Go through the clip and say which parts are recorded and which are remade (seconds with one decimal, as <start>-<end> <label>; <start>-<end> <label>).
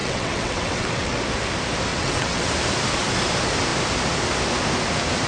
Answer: 0.0-1.2 remade; 1.2-1.9 recorded; 1.9-2.5 remade; 2.5-5.3 recorded